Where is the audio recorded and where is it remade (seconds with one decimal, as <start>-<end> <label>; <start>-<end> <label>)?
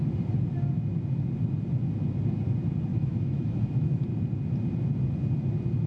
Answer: 0.0-2.9 recorded; 2.9-4.0 remade; 4.0-5.9 recorded